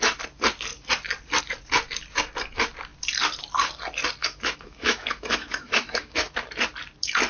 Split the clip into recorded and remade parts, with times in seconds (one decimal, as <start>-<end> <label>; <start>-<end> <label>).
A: 0.0-4.2 recorded; 4.2-6.5 remade; 6.5-7.3 recorded